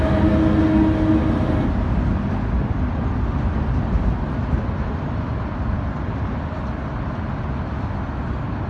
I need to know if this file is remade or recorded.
recorded